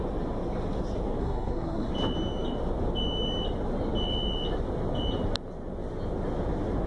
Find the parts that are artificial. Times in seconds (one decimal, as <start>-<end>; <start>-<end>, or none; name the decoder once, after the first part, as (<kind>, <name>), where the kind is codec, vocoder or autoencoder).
1.2-1.9 (codec, SNAC)